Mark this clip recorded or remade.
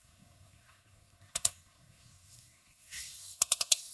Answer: remade